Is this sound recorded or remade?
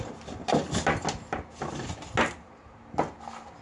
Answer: recorded